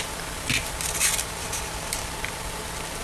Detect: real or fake real